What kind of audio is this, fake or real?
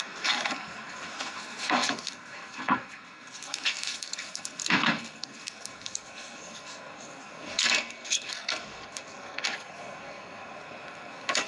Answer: fake